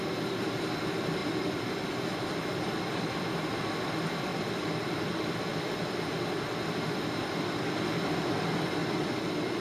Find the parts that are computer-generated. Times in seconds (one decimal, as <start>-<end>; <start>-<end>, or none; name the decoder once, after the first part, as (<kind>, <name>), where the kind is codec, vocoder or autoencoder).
0.0-8.8 (vocoder, BigVGAN v2)